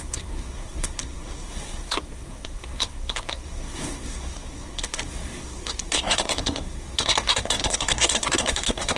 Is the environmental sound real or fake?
fake